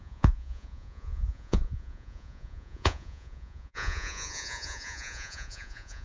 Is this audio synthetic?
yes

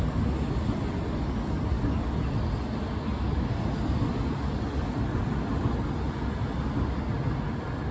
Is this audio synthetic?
no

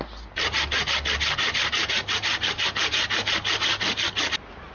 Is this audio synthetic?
no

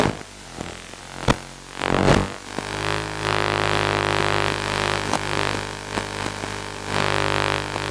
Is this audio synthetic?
no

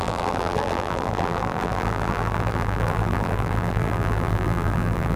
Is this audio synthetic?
yes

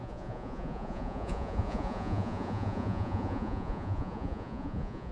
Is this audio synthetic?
yes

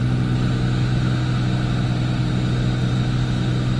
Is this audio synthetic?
no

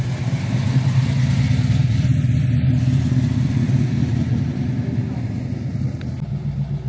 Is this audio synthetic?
no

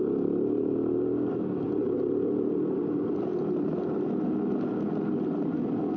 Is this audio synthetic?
no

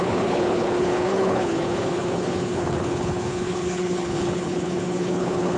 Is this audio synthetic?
yes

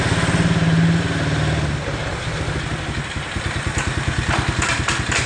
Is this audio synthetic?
no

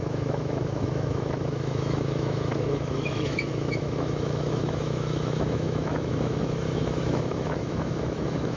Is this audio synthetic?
yes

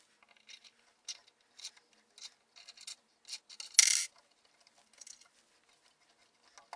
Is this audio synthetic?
no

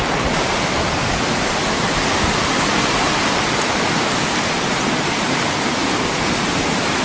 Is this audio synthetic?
no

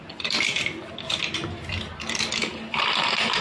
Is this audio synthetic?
no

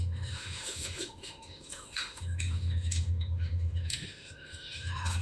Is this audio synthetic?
yes